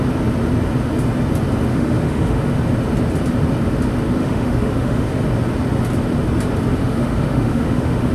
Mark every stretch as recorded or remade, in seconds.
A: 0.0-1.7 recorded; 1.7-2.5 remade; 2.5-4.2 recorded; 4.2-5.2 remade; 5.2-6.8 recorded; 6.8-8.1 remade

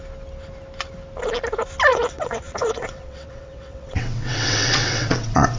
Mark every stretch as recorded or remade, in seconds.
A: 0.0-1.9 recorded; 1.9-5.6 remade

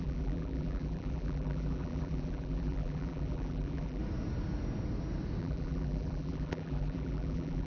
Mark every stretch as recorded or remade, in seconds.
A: 0.0-4.0 remade; 4.0-5.4 recorded; 5.4-7.7 remade

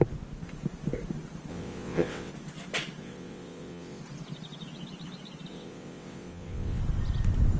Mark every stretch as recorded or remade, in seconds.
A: 0.0-1.5 recorded; 1.5-2.3 remade; 2.3-3.0 recorded; 3.0-4.0 remade; 4.0-5.5 recorded; 5.5-6.8 remade; 6.8-7.6 recorded